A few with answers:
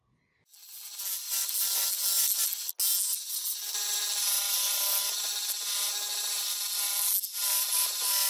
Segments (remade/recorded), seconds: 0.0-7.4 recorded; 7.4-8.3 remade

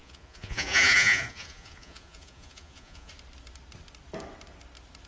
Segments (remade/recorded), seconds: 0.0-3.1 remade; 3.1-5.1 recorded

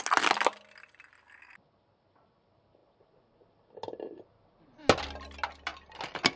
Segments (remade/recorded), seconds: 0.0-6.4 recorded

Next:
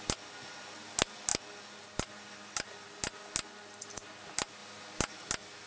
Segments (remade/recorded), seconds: 0.0-5.7 recorded